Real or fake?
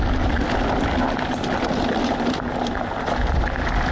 real